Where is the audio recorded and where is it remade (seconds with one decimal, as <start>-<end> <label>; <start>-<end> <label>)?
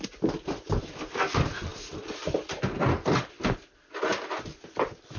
0.0-4.1 recorded; 4.1-5.2 remade